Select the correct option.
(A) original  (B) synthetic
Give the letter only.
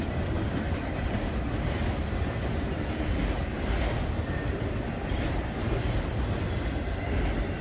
A